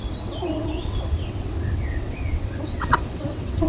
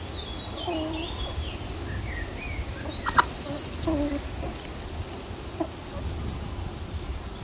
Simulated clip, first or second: first